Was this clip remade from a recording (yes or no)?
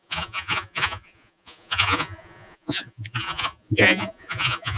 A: yes